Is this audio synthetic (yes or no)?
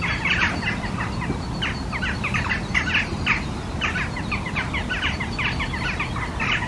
no